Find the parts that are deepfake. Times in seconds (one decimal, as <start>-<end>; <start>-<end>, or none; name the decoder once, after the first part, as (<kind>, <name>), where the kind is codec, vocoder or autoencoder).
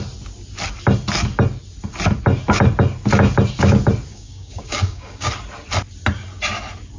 4.1-5.3 (codec, DAC)